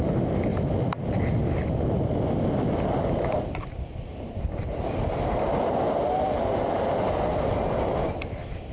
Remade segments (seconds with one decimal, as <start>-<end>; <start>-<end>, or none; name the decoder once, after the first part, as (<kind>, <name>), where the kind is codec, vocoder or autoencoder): none